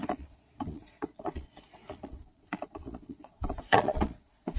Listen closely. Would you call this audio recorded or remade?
remade